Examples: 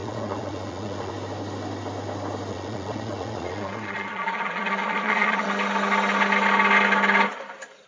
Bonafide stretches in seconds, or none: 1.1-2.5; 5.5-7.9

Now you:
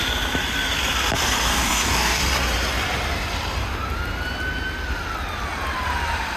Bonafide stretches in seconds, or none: 0.0-1.5; 2.2-6.4

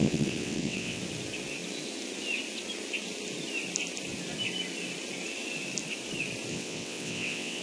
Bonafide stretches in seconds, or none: 1.0-6.5

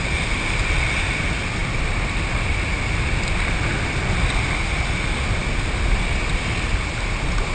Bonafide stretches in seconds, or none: 0.0-7.5

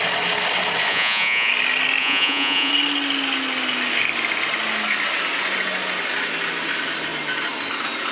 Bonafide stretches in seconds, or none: 0.0-0.9; 1.5-2.0; 2.7-8.1

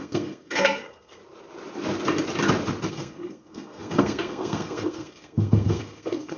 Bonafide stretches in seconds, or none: 1.2-2.9

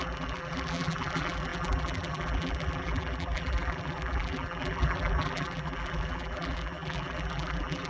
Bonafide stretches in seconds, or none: none

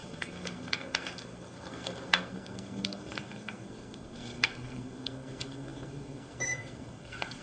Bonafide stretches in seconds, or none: none